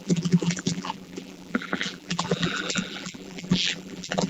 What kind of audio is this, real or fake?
fake